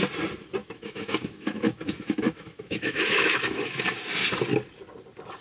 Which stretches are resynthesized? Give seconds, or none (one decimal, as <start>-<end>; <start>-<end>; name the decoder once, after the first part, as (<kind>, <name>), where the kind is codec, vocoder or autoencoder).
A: 0.6-3.8 (autoencoder, DAC-VAE)